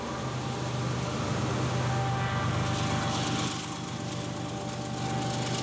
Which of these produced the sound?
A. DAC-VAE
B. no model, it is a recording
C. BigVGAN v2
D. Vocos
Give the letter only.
B